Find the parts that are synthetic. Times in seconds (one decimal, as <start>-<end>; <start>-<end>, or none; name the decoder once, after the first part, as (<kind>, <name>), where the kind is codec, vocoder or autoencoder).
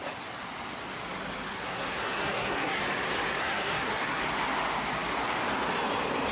1.5-2.8 (codec, SNAC); 3.4-4.2